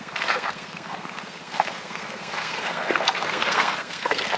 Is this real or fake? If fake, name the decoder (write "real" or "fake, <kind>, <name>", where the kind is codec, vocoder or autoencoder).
fake, codec, SNAC